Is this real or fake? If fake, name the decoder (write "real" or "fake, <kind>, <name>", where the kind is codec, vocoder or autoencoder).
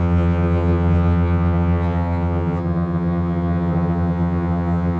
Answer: fake, vocoder, HiFi-GAN